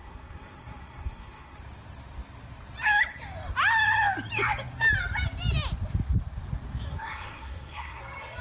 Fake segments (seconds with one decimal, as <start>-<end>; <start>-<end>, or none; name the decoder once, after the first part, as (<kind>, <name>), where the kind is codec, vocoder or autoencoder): 0.0-1.6 (codec, SNAC); 6.9-8.0